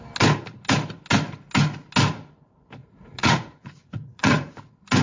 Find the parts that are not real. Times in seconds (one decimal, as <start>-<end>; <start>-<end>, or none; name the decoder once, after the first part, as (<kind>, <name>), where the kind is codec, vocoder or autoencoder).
2.8-4.5 (vocoder, Vocos)